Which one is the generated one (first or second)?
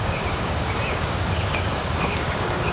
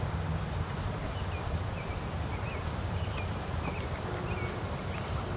first